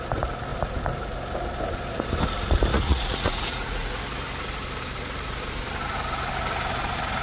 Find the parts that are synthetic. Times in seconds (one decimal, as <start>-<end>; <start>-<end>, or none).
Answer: 2.7-4.0